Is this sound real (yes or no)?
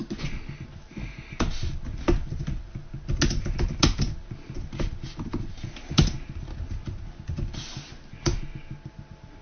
yes